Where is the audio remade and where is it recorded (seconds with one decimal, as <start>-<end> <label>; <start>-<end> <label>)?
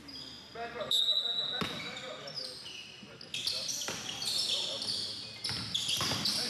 0.0-6.5 recorded